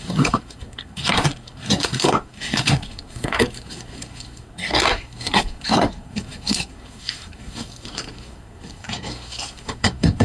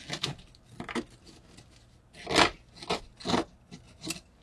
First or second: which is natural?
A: second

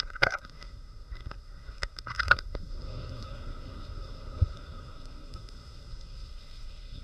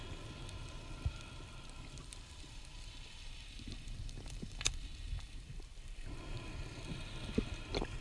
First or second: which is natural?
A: second